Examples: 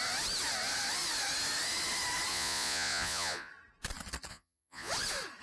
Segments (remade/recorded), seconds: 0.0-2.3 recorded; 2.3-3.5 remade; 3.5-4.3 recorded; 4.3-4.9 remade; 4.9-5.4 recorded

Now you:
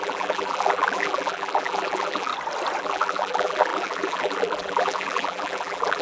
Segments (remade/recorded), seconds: 0.0-2.3 remade; 2.3-2.8 recorded; 2.8-6.0 remade

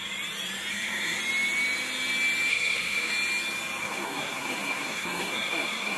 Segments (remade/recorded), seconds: 0.0-0.7 recorded; 0.7-1.2 remade; 1.2-2.5 recorded; 2.5-3.1 remade; 3.1-3.8 recorded; 3.8-6.0 remade

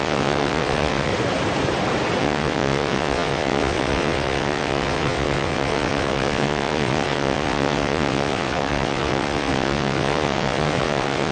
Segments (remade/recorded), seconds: 0.0-1.1 remade; 1.1-2.2 recorded; 2.2-11.3 remade

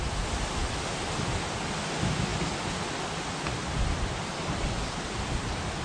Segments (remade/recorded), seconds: 0.0-5.8 recorded

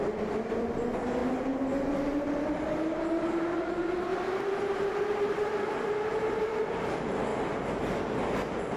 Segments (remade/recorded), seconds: 0.0-8.8 recorded

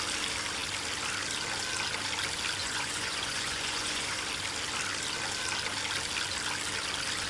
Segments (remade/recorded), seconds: 0.0-2.6 recorded; 2.6-4.2 remade; 4.2-7.3 recorded

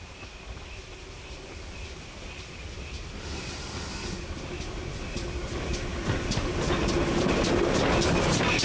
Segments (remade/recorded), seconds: 0.0-8.6 recorded